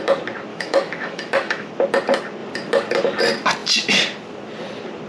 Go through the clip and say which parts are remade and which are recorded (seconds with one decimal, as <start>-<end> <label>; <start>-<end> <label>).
0.0-0.5 recorded; 0.5-1.7 remade; 1.7-5.1 recorded